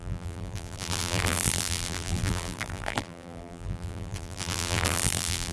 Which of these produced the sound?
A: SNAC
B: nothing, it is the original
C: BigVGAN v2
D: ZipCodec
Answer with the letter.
C